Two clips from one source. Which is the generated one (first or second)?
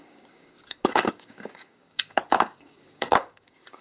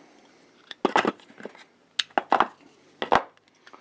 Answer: first